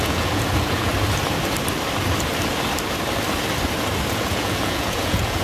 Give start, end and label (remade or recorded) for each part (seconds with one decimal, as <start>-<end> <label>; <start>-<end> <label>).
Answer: 0.0-0.9 remade; 0.9-4.1 recorded; 4.1-5.4 remade